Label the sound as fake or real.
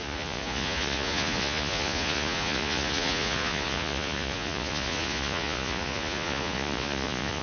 fake